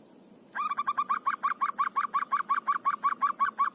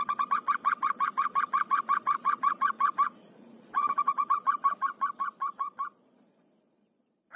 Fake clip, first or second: second